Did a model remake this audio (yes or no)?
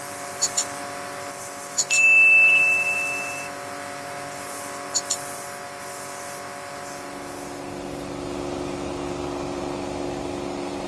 no